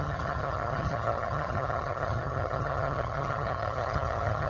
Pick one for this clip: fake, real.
fake